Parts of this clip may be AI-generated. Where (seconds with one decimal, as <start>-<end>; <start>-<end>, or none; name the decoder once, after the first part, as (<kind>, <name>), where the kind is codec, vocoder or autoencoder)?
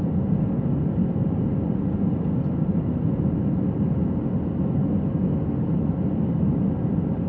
none